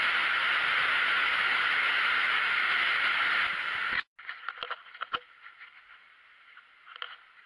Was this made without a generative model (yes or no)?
yes